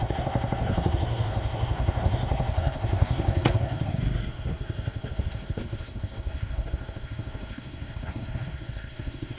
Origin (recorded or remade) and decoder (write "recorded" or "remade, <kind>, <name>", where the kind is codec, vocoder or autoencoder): remade, codec, SNAC